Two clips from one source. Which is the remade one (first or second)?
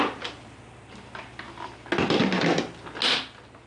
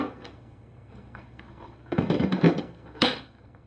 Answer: second